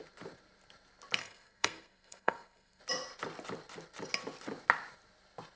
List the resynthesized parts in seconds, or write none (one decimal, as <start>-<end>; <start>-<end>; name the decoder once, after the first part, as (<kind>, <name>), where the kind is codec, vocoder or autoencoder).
1.2-2.8 (codec, SNAC)